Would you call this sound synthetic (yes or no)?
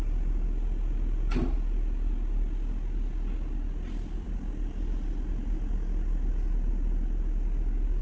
no